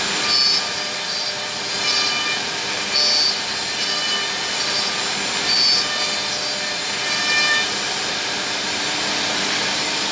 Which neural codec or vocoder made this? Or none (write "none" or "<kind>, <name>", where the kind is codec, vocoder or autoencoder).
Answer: none